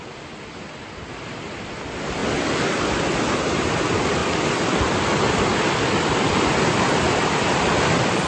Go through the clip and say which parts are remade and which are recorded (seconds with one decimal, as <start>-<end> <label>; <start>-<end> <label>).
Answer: 0.0-2.2 recorded; 2.2-2.8 remade; 2.8-4.2 recorded; 4.2-6.5 remade; 6.5-8.3 recorded